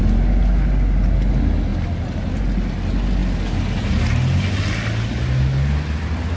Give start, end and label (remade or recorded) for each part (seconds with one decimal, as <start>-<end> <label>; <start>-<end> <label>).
0.0-6.4 recorded